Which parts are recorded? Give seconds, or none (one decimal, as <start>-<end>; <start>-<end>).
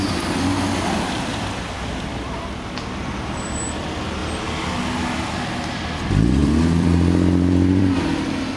0.0-3.0; 3.6-6.4; 7.8-8.6